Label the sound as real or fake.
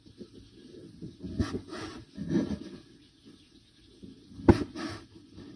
real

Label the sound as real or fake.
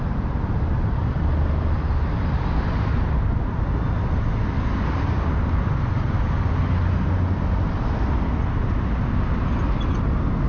real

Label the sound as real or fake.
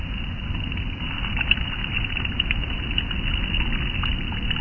real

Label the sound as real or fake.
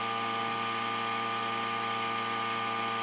real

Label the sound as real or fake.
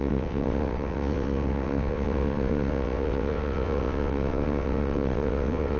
fake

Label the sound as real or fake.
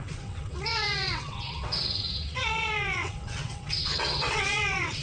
fake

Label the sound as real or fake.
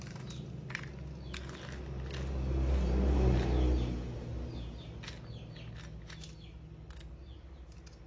real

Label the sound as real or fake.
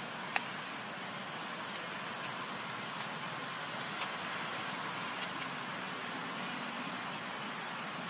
real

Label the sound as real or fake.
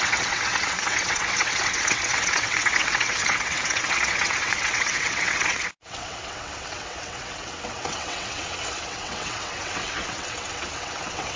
fake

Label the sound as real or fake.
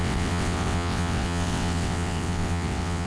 fake